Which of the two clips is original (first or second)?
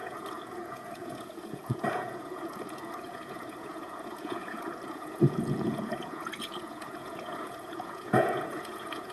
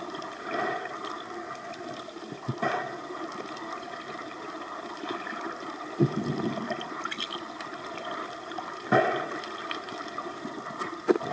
second